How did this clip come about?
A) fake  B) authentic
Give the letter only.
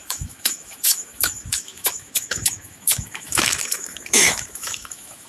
A